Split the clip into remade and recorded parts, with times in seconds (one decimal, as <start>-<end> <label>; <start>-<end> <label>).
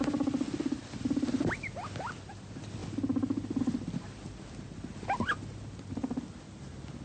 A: 0.0-7.0 recorded